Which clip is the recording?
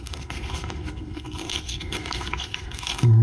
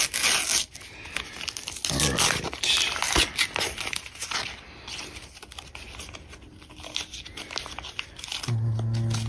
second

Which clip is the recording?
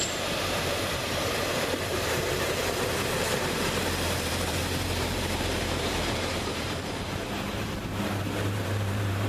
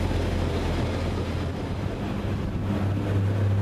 second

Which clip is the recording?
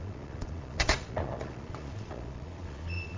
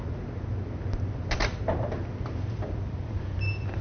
second